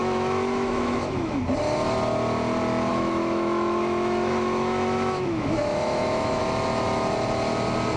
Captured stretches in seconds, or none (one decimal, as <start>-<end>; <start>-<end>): 1.4-2.9; 6.4-8.0